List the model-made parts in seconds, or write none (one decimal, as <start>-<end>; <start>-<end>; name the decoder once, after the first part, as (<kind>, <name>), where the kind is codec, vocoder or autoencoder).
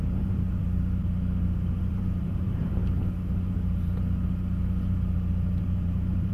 0.0-0.6 (vocoder, BigVGAN v2); 1.8-2.8; 5.6-6.3